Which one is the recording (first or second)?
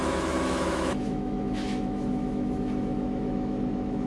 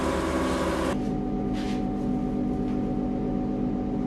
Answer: second